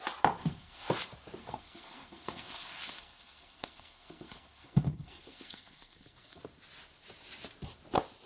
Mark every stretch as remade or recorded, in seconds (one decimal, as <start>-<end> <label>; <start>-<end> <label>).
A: 0.0-0.4 recorded; 0.4-0.9 remade; 0.9-1.4 recorded; 1.4-6.4 remade; 6.4-8.3 recorded